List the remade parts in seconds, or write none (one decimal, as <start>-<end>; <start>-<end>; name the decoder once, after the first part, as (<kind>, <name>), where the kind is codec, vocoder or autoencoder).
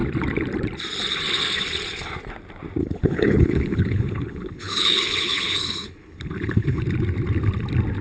2.8-6.8 (codec, HILCodec)